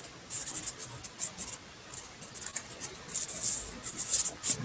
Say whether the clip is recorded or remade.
recorded